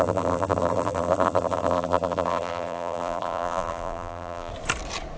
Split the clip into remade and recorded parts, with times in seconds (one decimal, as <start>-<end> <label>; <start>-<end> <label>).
0.0-4.5 remade; 4.5-5.2 recorded